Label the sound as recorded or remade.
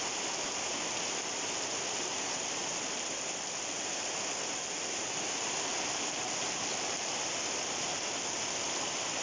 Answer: recorded